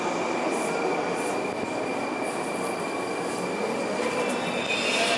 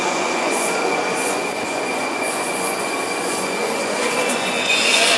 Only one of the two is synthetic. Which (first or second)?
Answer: second